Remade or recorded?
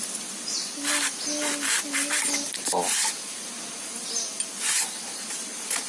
recorded